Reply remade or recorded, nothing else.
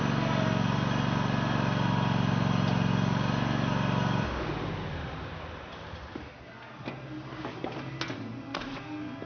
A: recorded